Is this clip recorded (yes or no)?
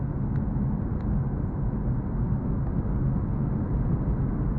yes